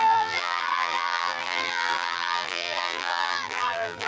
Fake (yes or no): yes